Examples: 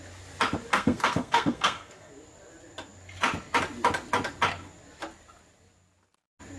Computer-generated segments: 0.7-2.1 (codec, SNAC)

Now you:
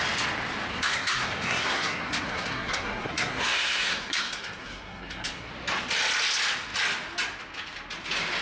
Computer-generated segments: 0.7-5.5 (codec, SNAC)

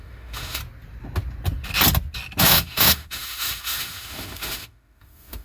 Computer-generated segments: 0.0-0.6 (autoencoder, DAC-VAE); 2.4-5.4